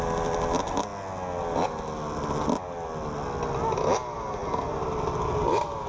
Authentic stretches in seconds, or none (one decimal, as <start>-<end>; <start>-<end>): 0.0-5.9